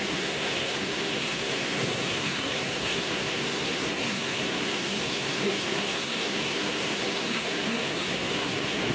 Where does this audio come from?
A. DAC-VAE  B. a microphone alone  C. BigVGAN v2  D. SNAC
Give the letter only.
D